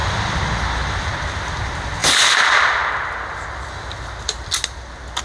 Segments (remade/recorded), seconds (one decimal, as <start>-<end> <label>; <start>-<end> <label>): 0.0-1.1 remade; 1.1-5.2 recorded